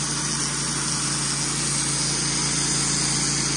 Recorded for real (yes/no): yes